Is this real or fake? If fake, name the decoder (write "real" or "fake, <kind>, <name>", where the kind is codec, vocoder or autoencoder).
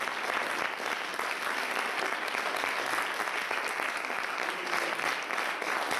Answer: real